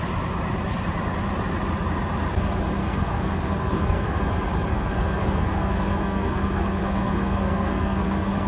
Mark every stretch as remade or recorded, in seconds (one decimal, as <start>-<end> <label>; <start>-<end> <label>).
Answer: 0.0-2.8 recorded; 2.8-4.2 remade; 4.2-4.7 recorded; 4.7-8.5 remade